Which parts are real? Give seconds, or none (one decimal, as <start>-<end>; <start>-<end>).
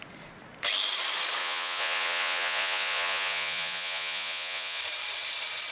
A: 0.0-1.4; 4.8-5.7